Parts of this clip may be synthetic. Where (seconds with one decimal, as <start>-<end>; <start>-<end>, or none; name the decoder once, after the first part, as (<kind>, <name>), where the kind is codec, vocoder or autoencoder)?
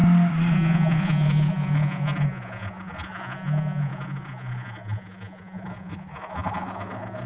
0.5-7.3 (vocoder, Vocos)